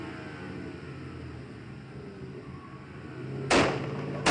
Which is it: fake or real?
real